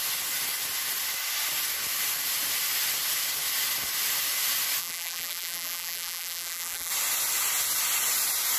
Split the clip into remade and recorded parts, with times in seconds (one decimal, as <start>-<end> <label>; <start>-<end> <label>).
0.0-4.8 recorded; 4.8-6.9 remade; 6.9-8.6 recorded